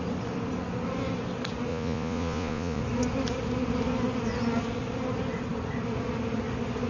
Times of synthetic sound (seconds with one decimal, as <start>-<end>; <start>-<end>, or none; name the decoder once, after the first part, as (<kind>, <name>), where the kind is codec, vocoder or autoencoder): 1.7-2.8 (vocoder, Vocos)